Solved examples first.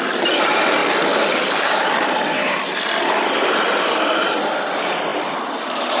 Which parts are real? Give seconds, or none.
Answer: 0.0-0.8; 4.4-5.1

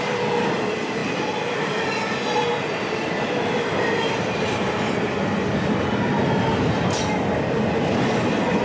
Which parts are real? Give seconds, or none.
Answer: 0.0-6.5; 7.1-8.6

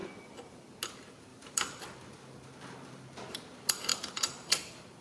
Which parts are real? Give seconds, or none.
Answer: 0.0-0.9

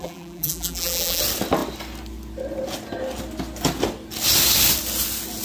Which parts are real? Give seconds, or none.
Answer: 1.2-5.4